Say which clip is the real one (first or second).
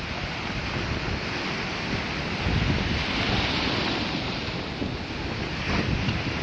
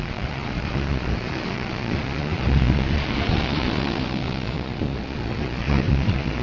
first